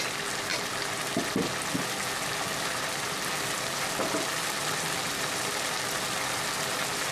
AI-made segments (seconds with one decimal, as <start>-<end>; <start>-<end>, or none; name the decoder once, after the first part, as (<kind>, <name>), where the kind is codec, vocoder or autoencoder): none